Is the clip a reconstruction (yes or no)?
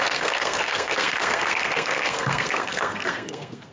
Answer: yes